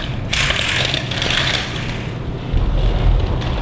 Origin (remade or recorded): recorded